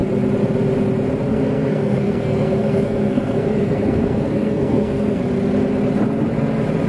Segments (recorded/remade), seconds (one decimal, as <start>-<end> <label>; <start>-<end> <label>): 0.0-1.3 recorded; 1.3-5.2 remade; 5.2-6.9 recorded